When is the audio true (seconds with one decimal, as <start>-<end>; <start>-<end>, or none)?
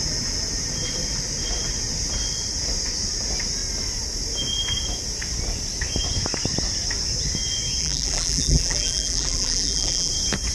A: 0.0-7.8; 10.1-10.5